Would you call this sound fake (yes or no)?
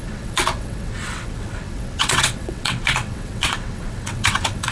yes